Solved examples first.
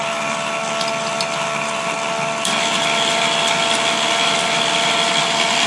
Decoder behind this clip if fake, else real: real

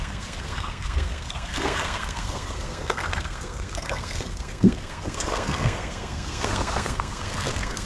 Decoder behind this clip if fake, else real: fake, codec, SNAC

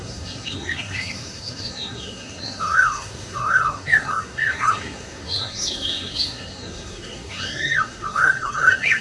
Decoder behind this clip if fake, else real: fake, codec, SNAC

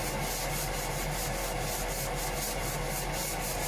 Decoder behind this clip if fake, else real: real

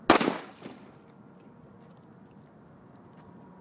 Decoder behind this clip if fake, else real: real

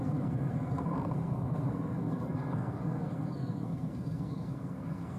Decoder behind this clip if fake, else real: fake, codec, SNAC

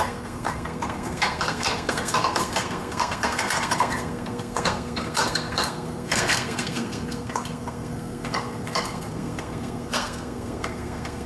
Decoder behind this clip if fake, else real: fake, codec, SNAC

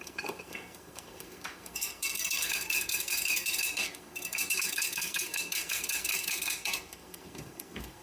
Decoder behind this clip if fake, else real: fake, codec, SNAC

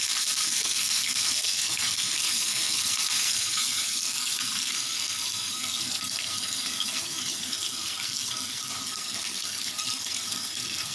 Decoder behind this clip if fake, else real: fake, codec, SNAC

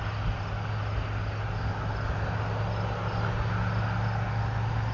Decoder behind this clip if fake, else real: real